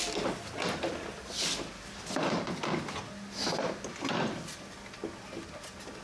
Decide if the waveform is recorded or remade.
recorded